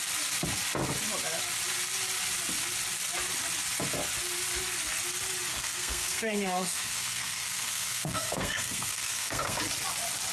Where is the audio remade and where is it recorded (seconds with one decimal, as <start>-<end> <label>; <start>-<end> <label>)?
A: 0.0-5.5 recorded; 5.5-9.6 remade; 9.6-10.3 recorded